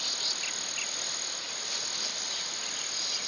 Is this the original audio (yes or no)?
yes